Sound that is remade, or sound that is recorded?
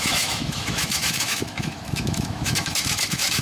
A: remade